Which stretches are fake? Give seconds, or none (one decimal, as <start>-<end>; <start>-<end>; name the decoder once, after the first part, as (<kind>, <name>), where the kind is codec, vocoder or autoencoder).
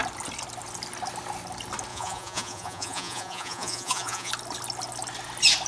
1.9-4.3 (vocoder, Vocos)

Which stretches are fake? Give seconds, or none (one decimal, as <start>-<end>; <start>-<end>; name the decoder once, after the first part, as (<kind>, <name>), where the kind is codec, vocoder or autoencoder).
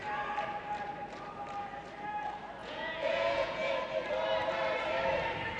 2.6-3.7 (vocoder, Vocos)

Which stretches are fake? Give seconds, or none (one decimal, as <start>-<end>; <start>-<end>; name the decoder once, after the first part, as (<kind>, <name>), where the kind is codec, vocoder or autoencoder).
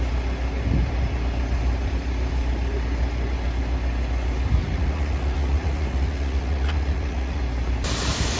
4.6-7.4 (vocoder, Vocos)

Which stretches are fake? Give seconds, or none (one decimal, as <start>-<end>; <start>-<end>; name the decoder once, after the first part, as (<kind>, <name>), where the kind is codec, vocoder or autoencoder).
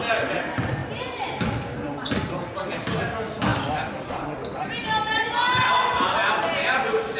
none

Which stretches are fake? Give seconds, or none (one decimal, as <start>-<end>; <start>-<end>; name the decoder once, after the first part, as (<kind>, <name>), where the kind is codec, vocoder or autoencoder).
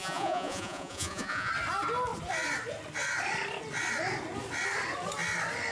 0.0-1.5 (vocoder, Vocos)